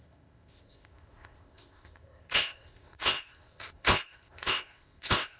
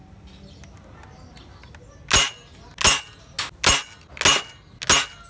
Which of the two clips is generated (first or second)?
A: first